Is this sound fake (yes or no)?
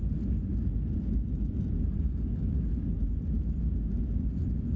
no